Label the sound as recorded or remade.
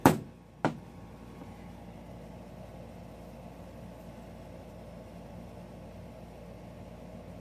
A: recorded